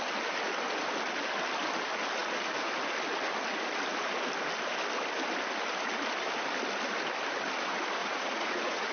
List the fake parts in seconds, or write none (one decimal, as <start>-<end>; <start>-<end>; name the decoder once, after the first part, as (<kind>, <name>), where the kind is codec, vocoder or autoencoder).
8.0-8.9 (vocoder, Vocos)

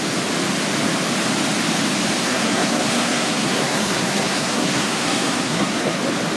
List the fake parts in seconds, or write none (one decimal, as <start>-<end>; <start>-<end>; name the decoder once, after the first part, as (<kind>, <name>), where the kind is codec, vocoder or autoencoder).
2.2-6.0 (codec, SNAC)

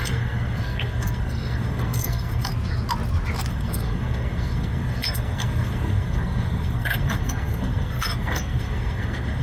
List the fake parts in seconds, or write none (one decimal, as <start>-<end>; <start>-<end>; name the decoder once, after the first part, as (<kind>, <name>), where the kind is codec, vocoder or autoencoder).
0.0-2.5 (codec, SNAC); 3.5-9.4